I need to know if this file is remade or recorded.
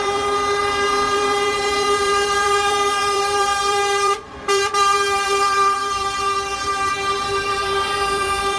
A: remade